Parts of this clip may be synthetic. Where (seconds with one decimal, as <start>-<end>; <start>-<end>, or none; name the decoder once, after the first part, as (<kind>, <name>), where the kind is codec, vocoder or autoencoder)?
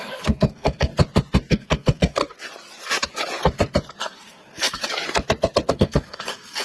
0.0-0.9 (codec, SNAC); 1.5-2.2; 4.0-4.8; 5.7-6.6